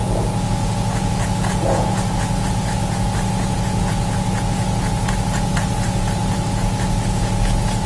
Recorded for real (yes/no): no